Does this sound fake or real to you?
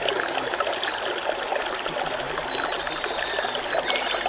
real